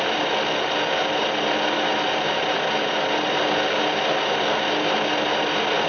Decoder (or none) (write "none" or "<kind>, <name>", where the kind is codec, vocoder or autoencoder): none